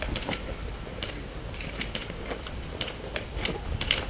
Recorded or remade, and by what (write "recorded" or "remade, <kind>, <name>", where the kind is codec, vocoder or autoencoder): recorded